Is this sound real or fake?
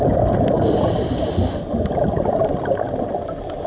real